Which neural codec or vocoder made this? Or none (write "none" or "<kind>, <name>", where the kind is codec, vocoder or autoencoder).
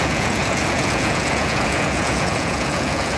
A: vocoder, Vocos